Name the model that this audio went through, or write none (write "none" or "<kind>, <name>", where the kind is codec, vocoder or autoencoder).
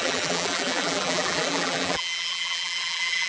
vocoder, BigVGAN v2